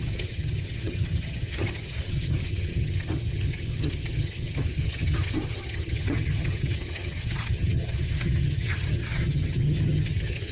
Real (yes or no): no